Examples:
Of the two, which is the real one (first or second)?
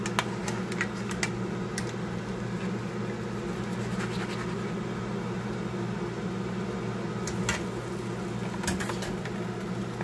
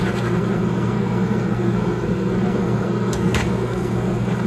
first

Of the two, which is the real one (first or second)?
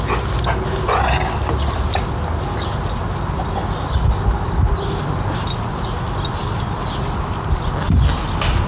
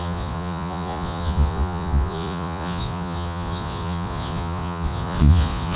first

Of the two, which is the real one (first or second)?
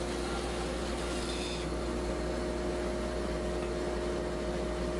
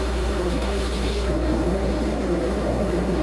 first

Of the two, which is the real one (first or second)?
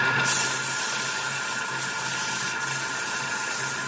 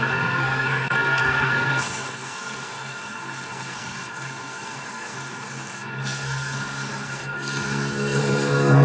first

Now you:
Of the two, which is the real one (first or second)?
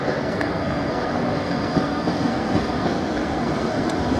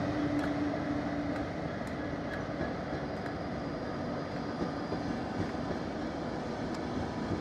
second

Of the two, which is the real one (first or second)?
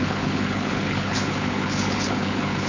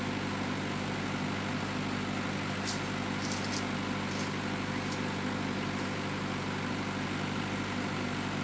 second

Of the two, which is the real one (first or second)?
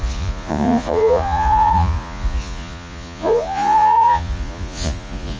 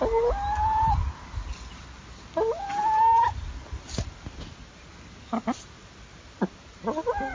second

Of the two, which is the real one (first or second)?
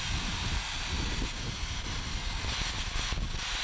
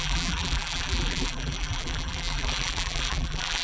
first